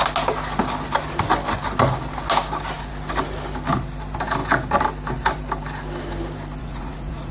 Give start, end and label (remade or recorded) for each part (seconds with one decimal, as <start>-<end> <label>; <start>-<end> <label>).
0.0-6.6 recorded; 6.6-7.3 remade